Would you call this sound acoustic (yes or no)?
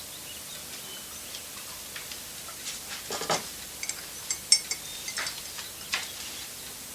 yes